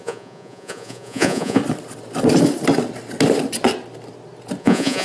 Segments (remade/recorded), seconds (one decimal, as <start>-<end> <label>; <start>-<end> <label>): 0.0-1.6 remade; 1.6-4.6 recorded; 4.6-5.0 remade